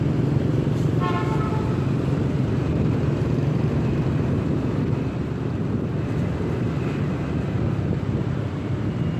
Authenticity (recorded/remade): remade